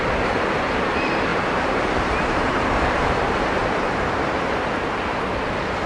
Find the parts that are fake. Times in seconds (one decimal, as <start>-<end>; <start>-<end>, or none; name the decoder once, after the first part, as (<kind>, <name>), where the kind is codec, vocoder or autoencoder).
1.3-3.1 (vocoder, BigVGAN v2); 3.6-4.4